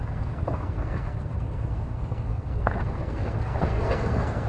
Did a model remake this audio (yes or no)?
yes